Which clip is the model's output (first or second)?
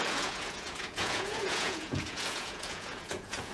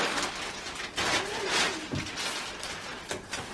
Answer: first